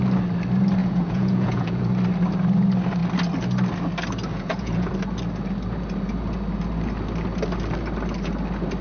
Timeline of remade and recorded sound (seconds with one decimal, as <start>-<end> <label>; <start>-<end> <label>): 0.0-0.8 recorded; 0.8-1.9 remade; 1.9-4.3 recorded; 4.3-4.9 remade; 4.9-8.8 recorded